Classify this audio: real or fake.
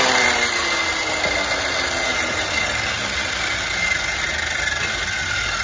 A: real